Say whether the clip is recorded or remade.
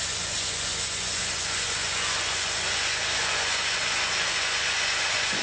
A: remade